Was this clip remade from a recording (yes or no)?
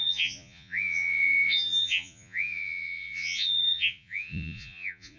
yes